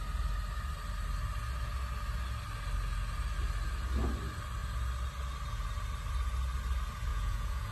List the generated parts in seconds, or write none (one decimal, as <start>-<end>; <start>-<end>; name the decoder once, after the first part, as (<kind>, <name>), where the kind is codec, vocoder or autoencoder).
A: 7.1-7.7 (vocoder, Vocos)